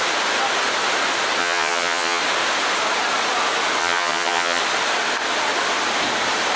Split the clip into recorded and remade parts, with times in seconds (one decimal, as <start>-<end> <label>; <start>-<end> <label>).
0.0-1.4 recorded; 1.4-2.2 remade; 2.2-3.8 recorded; 3.8-4.6 remade; 4.6-6.6 recorded